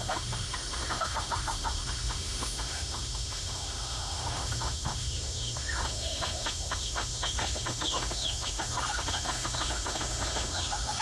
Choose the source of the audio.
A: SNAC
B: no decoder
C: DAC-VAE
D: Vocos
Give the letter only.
C